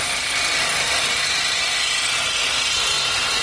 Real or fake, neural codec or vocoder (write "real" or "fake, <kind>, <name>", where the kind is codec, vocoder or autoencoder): real